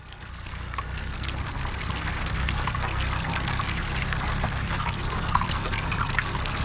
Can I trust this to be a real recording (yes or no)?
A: no